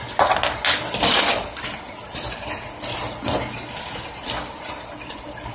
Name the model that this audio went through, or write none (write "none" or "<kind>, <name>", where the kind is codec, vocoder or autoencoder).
none